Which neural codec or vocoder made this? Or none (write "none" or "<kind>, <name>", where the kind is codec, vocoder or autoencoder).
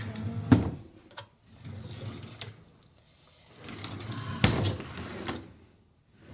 none